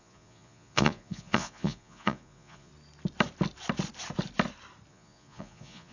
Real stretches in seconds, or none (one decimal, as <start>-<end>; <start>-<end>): 2.7-4.9